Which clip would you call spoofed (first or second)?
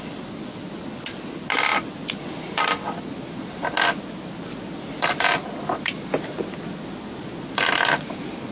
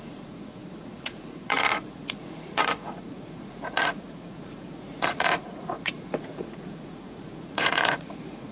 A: second